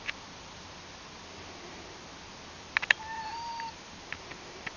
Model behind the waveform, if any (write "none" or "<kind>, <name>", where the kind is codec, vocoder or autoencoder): none